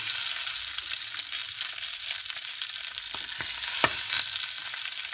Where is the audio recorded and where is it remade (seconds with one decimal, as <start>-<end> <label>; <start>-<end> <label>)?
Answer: 0.0-5.1 recorded